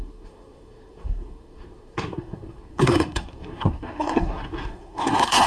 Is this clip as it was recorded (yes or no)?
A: no